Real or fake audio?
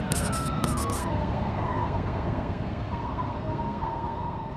fake